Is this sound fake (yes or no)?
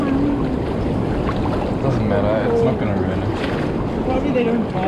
no